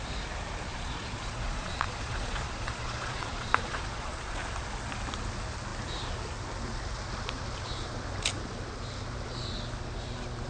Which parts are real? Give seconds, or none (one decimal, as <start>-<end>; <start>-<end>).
0.0-0.7; 4.4-10.5